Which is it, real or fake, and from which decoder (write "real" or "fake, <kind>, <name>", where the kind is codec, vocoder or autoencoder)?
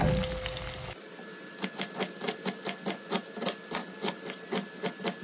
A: real